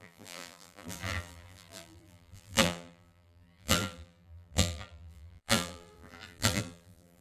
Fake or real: fake